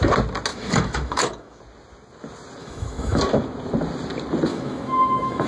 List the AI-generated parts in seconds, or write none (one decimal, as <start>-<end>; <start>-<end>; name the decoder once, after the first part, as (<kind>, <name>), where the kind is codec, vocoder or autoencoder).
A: 0.5-1.6 (autoencoder, DAC-VAE); 2.6-3.2; 4.5-5.5

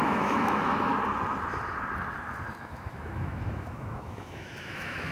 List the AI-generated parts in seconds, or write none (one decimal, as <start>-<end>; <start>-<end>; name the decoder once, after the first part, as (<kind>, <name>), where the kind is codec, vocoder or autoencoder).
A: 0.0-0.9 (autoencoder, DAC-VAE); 2.6-5.1

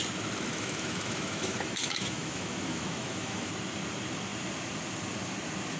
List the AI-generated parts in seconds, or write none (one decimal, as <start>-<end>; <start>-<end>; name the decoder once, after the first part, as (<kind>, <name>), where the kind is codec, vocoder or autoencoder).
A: 0.5-3.5 (autoencoder, DAC-VAE)

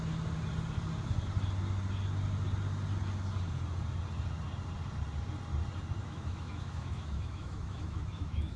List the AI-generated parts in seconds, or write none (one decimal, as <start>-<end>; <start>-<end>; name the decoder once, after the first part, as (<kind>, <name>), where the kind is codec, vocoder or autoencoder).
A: 6.0-8.6 (autoencoder, DAC-VAE)

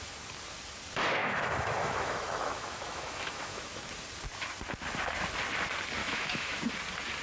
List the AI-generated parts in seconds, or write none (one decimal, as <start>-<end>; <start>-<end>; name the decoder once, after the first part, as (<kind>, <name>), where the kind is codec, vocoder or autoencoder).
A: 1.2-3.8 (autoencoder, DAC-VAE); 6.0-6.7

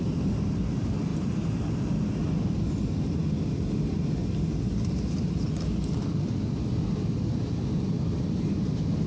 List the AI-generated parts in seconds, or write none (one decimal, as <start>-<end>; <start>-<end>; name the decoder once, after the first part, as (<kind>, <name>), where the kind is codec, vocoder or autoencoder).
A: none

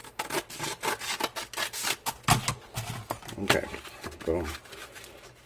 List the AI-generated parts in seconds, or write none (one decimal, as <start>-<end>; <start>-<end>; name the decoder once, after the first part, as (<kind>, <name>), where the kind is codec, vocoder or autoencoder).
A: none

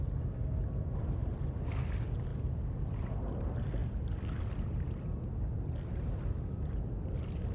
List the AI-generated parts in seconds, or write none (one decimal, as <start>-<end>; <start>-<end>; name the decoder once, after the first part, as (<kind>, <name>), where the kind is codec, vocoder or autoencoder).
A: none